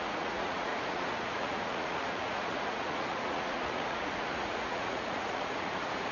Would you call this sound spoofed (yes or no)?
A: yes